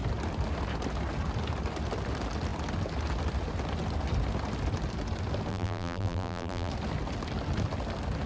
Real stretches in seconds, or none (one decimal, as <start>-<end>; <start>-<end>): 0.0-5.5; 6.7-8.3